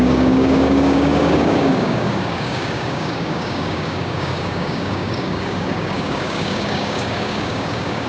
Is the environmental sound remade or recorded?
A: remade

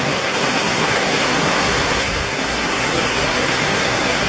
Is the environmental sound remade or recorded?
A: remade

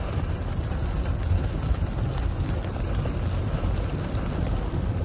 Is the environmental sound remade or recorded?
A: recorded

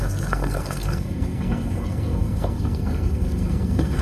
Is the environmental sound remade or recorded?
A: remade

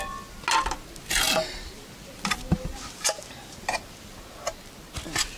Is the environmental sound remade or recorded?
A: recorded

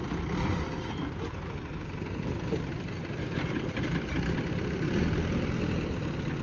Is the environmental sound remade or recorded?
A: remade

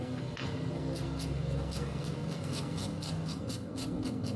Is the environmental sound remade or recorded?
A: remade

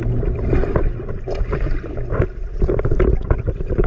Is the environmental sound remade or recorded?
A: recorded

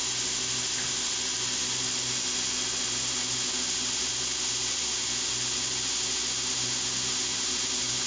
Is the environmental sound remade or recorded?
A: recorded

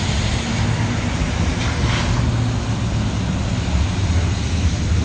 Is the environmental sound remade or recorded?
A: recorded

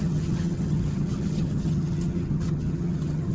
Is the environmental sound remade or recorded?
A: remade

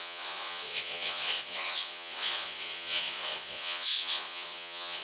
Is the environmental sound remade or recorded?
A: remade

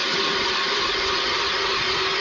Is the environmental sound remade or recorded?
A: recorded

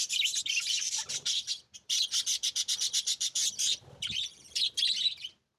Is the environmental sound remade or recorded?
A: remade